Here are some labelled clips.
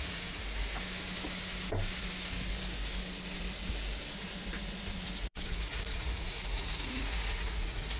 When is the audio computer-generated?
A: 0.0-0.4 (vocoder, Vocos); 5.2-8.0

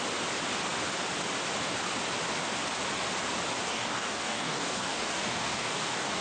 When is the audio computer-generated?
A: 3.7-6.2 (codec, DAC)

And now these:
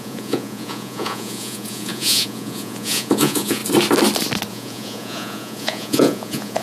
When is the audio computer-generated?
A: 0.0-3.6 (vocoder, Vocos); 4.5-6.6